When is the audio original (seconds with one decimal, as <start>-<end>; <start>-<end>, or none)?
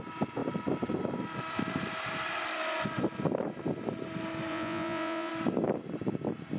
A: 0.0-4.5; 5.3-6.6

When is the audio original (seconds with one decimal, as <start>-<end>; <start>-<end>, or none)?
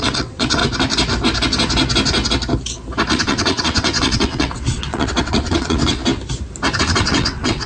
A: 0.6-3.1; 6.0-6.8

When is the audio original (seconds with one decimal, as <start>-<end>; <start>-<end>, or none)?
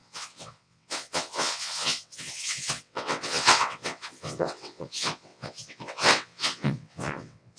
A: none